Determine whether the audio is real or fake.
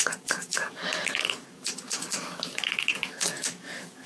fake